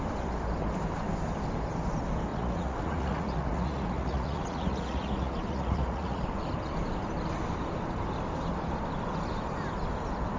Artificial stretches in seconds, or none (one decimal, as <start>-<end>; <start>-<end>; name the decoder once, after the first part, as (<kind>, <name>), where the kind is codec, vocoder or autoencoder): 2.3-6.2 (vocoder, Vocos)

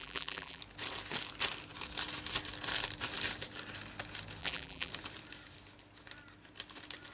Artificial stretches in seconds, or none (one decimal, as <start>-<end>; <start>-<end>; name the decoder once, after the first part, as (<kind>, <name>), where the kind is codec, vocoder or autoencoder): 0.0-0.6 (vocoder, BigVGAN v2); 4.4-4.9